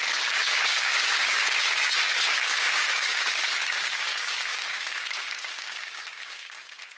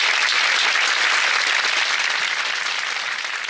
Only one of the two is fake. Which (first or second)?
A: first